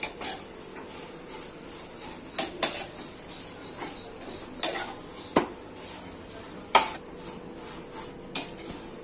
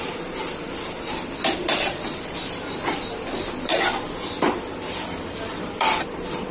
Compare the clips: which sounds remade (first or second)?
second